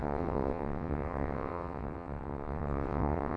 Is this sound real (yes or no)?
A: no